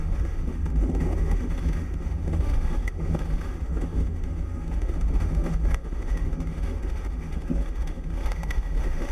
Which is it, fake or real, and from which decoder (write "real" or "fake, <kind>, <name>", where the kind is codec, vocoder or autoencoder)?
fake, autoencoder, DAC-VAE